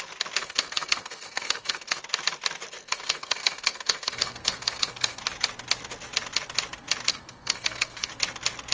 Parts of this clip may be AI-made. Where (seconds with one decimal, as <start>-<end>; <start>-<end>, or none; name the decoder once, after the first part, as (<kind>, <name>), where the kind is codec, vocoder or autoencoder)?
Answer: 0.4-2.0 (codec, SNAC); 2.8-5.2; 7.1-8.1